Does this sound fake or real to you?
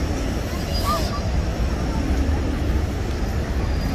real